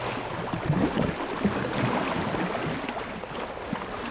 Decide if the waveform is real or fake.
real